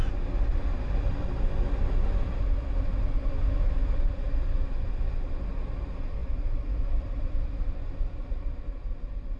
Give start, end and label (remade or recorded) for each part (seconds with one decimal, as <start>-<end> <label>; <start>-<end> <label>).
0.0-9.4 recorded